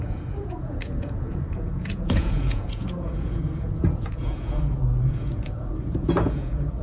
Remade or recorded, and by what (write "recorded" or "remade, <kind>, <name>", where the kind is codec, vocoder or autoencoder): remade, vocoder, Vocos